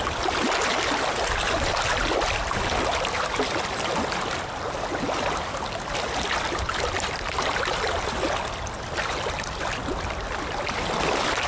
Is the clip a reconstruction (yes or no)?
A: no